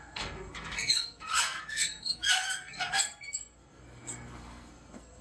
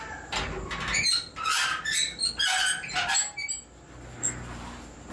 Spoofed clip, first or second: first